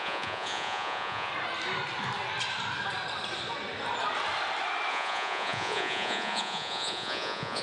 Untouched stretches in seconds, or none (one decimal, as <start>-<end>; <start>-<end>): 1.3-4.9